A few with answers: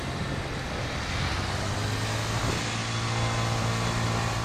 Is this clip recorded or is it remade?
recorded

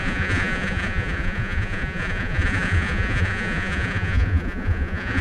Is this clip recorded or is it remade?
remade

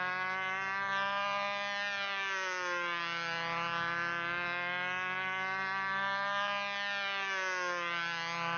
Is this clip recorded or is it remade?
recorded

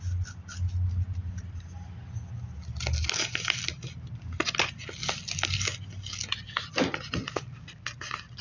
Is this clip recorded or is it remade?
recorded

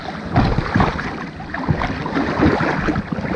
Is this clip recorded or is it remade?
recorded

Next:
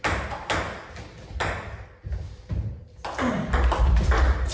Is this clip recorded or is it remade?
recorded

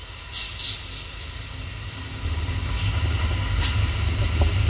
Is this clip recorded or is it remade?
recorded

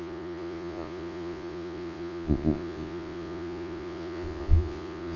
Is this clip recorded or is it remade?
remade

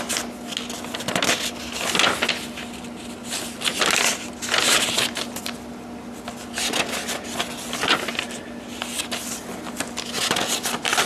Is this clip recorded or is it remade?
recorded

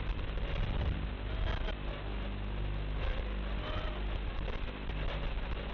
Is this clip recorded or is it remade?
recorded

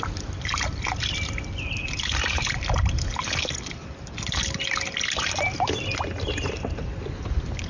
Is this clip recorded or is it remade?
recorded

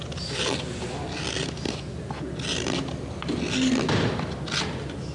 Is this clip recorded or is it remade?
recorded